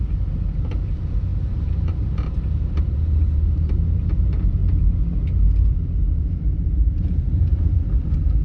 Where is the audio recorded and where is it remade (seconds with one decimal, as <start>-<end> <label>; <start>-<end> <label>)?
0.0-4.6 remade; 4.6-6.1 recorded; 6.1-8.4 remade